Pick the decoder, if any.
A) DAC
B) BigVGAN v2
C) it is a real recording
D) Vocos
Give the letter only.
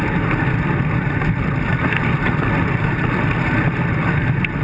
B